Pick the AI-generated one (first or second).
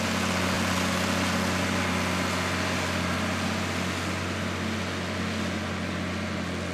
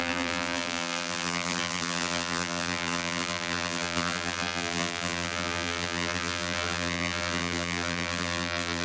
second